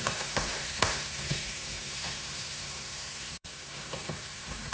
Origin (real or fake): fake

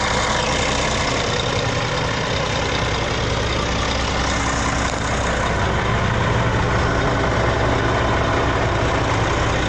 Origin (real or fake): real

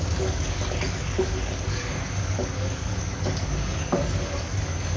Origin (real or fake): fake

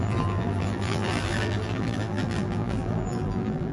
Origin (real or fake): fake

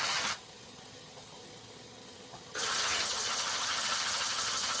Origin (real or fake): fake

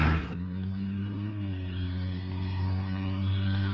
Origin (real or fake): fake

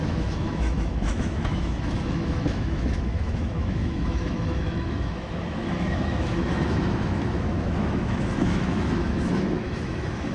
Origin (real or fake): fake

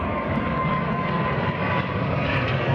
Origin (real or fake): fake